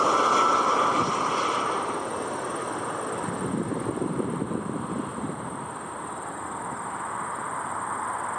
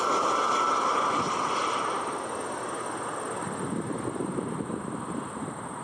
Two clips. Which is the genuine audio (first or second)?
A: second